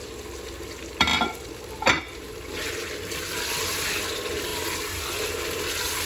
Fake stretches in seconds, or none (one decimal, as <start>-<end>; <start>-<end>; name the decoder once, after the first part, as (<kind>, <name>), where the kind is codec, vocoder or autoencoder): 1.1-2.7 (vocoder, BigVGAN v2); 4.5-5.0